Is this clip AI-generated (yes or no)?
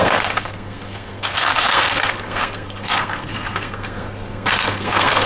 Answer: yes